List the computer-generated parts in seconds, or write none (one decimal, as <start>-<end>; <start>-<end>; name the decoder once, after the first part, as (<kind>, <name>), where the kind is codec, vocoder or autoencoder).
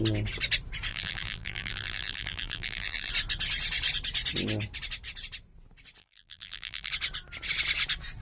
0.9-3.1 (vocoder, BigVGAN v2); 6.0-6.9